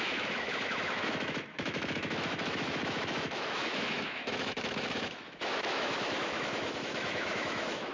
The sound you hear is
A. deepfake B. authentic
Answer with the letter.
A